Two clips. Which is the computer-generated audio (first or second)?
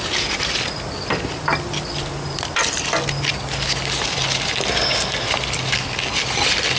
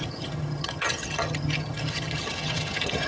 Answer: second